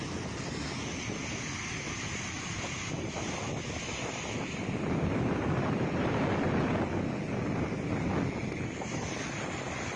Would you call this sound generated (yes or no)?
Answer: yes